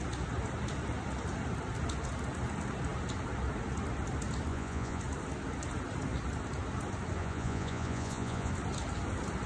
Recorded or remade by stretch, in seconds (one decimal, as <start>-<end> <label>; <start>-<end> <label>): 0.0-4.5 recorded; 4.5-5.0 remade; 5.0-7.2 recorded; 7.2-8.5 remade; 8.5-9.5 recorded